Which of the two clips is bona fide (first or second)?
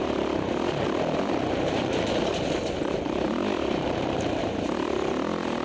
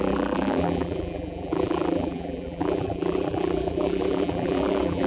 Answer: first